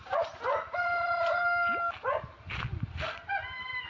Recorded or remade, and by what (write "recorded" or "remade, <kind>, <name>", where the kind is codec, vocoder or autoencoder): recorded